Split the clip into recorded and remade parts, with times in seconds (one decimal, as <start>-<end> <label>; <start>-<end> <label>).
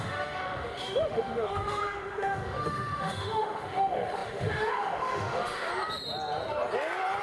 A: 0.0-5.7 remade; 5.7-7.2 recorded